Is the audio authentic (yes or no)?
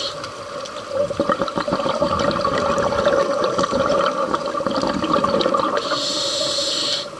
yes